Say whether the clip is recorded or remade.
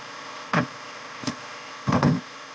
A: remade